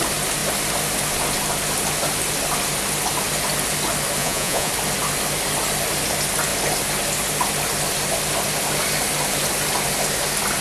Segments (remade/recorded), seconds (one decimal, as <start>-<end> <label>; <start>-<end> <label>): 0.0-4.2 recorded; 4.2-4.7 remade; 4.7-10.6 recorded